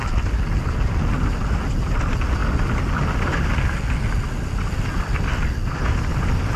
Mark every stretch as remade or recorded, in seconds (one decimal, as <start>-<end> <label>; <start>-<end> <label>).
0.0-6.6 recorded